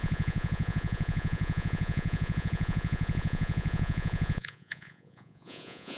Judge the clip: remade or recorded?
remade